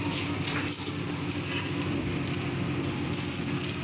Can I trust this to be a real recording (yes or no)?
yes